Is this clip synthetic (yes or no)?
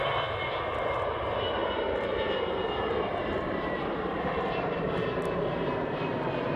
yes